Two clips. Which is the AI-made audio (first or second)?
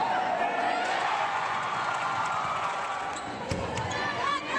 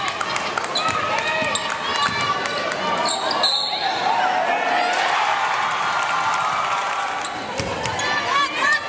first